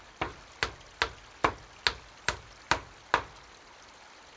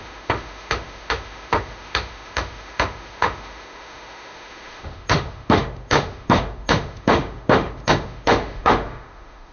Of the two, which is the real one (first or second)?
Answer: first